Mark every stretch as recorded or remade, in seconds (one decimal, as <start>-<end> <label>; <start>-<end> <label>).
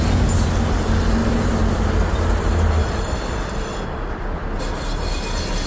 0.0-1.2 recorded; 1.2-4.6 remade; 4.6-5.7 recorded